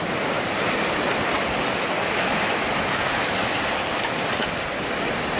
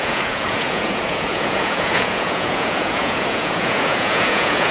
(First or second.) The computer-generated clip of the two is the second